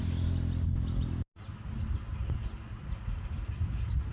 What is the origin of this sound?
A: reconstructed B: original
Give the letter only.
B